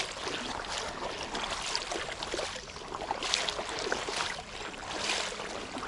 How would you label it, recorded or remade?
recorded